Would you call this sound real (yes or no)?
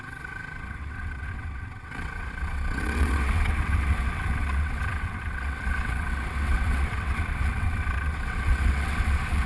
no